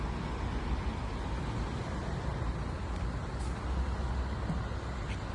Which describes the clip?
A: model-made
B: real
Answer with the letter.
B